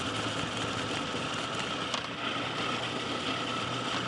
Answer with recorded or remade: recorded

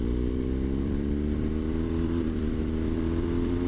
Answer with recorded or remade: remade